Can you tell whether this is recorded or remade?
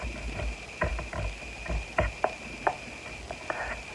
recorded